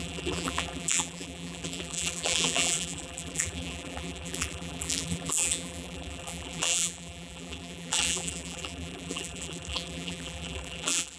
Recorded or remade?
remade